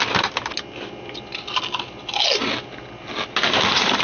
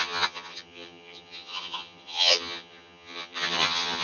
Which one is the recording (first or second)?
first